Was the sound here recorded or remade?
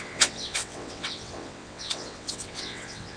remade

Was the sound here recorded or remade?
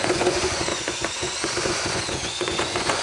remade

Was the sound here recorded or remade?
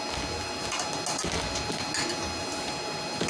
recorded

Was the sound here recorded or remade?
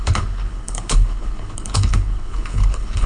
remade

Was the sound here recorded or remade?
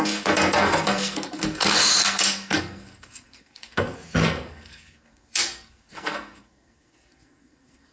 remade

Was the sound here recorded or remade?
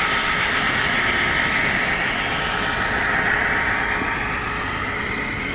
recorded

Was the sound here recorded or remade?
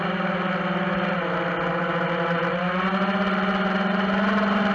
recorded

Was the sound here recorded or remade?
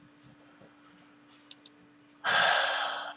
recorded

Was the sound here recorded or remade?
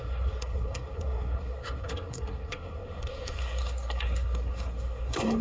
remade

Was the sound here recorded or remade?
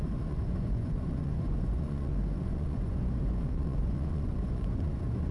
remade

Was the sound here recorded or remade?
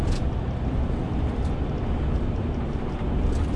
recorded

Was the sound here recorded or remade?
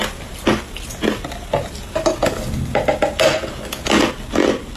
recorded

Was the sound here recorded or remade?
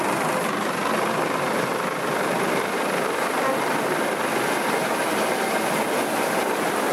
recorded